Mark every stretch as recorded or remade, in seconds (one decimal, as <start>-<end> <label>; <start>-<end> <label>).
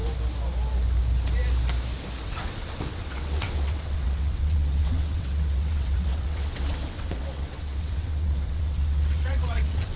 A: 0.0-2.2 recorded; 2.2-10.0 remade